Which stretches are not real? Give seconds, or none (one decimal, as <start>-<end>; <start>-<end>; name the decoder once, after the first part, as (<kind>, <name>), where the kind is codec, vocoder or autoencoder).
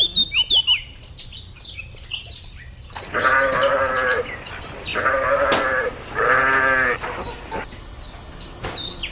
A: none